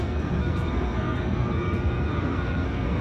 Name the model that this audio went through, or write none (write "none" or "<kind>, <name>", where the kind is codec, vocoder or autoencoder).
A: codec, SNAC